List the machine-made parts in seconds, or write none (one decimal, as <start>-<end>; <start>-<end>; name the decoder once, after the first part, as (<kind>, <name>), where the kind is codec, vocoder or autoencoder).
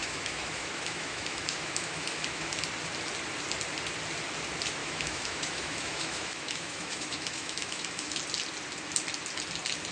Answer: 0.0-2.5 (autoencoder, DAC-VAE); 4.8-8.2